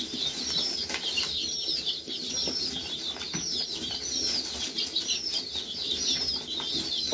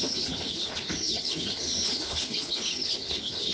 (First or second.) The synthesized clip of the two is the second